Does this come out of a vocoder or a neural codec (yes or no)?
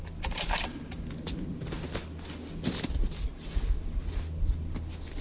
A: no